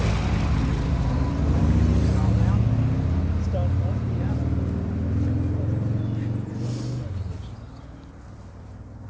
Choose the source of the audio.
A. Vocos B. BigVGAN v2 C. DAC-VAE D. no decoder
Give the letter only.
D